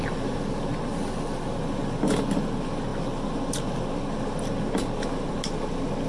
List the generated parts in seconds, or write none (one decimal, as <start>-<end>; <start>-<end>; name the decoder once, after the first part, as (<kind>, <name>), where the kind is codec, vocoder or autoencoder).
none